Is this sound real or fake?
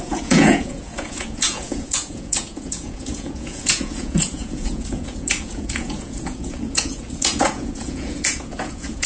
fake